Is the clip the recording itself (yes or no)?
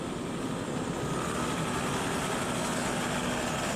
yes